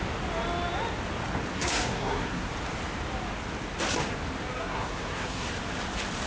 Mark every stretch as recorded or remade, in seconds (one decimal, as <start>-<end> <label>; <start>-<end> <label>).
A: 0.0-1.5 recorded; 1.5-2.5 remade; 2.5-4.6 recorded; 4.6-5.5 remade; 5.5-6.3 recorded